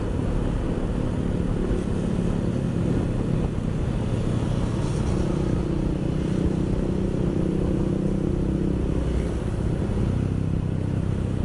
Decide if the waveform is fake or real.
real